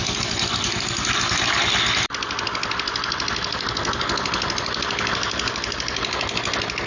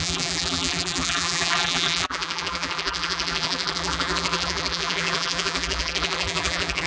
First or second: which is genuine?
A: first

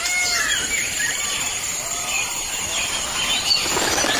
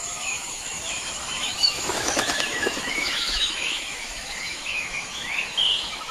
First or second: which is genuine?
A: first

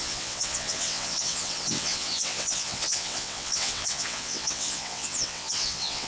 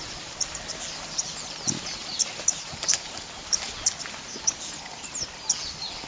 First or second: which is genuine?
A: second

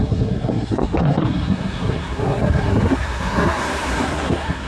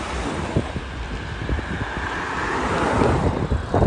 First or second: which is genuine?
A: second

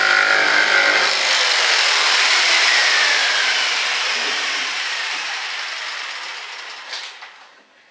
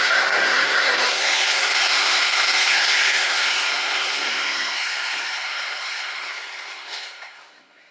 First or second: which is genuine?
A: first